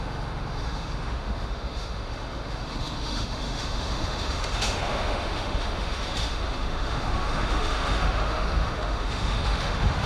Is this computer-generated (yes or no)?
yes